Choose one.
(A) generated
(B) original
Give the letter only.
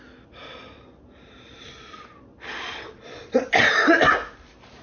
B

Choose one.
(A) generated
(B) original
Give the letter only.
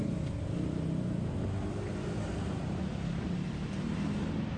B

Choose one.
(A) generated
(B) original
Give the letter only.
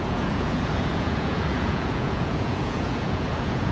A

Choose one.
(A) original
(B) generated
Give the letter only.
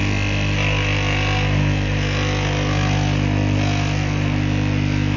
A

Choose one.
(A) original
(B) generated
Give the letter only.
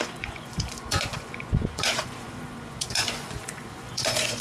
B